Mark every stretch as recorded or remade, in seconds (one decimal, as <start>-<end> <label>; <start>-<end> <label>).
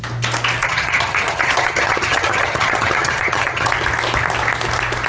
0.0-0.6 recorded; 0.6-3.7 remade; 3.7-5.1 recorded